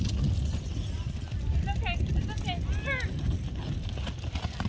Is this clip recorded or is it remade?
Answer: recorded